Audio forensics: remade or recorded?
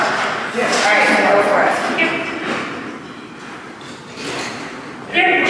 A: recorded